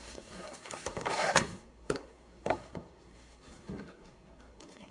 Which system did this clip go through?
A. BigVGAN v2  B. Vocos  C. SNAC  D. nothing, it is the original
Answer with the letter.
C